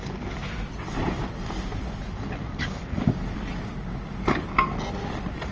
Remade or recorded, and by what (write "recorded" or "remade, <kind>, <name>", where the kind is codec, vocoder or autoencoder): recorded